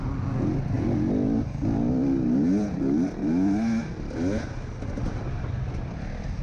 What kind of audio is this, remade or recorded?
recorded